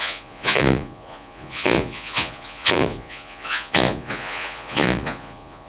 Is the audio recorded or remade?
remade